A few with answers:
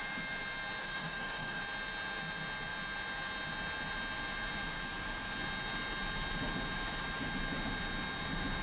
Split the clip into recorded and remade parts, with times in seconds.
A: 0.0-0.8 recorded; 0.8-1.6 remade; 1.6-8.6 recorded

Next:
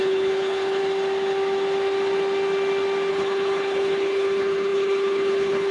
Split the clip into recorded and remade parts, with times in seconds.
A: 0.0-0.8 remade; 0.8-3.1 recorded; 3.1-5.7 remade

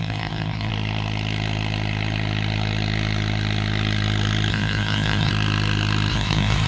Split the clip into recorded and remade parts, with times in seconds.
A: 0.0-0.7 remade; 0.7-4.5 recorded; 4.5-5.3 remade; 5.3-6.1 recorded; 6.1-6.7 remade